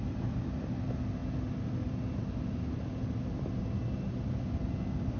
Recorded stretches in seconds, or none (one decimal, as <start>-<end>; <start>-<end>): 0.0-5.2